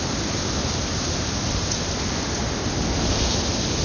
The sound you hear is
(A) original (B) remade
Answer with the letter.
A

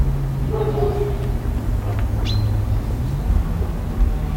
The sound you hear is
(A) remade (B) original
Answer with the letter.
B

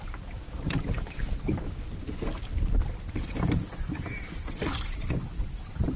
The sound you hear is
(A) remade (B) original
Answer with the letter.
B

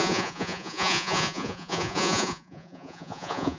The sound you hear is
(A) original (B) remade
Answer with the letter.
B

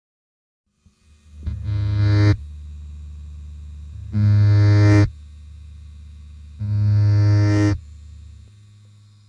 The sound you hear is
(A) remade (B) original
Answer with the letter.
B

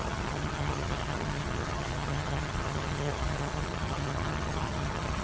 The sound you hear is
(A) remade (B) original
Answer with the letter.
A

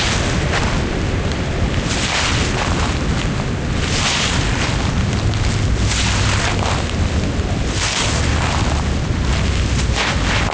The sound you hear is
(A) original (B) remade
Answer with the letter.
A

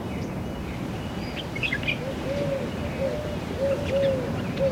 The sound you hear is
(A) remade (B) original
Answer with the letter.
B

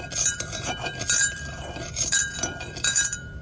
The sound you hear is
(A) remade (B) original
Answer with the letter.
A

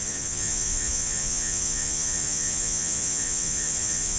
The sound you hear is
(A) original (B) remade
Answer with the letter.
B